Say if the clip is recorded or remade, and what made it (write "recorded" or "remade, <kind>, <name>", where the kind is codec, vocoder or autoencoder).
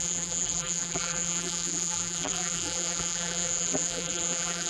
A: remade, vocoder, BigVGAN v2